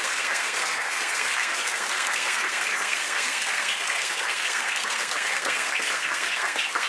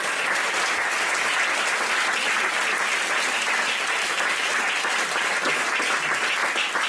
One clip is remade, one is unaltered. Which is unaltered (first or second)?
second